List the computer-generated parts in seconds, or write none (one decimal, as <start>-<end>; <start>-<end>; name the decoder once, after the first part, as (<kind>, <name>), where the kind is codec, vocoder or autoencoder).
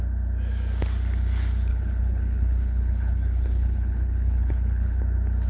1.7-5.0 (codec, HILCodec)